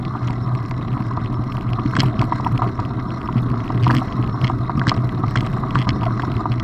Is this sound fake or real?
real